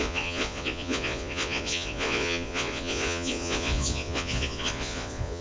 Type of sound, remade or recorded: remade